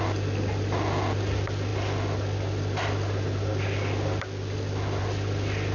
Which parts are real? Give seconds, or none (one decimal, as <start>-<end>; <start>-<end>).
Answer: 0.0-5.7